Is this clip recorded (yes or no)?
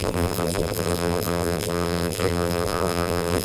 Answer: no